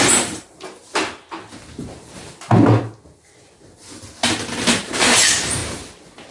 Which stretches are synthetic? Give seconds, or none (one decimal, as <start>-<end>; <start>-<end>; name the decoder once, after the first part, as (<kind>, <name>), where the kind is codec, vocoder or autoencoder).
0.0-0.8 (vocoder, BigVGAN v2); 4.6-5.6